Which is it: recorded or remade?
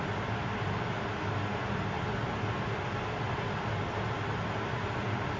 recorded